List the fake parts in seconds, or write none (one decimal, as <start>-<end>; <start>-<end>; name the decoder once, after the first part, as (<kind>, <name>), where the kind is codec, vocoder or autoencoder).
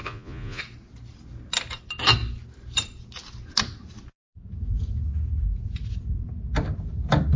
0.0-0.6 (vocoder, Vocos)